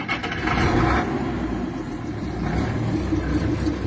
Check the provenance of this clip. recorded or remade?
recorded